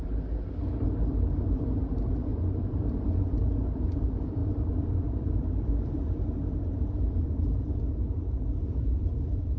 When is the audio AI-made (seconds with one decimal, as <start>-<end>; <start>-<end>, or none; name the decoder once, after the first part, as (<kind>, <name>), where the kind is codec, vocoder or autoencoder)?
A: 2.3-3.2 (vocoder, BigVGAN v2); 4.4-7.9